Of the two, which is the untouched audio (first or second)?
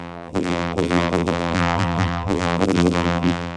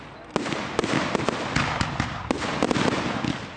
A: second